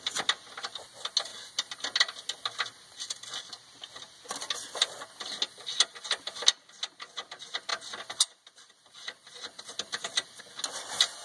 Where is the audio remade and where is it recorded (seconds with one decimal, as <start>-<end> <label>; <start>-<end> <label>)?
0.0-11.2 recorded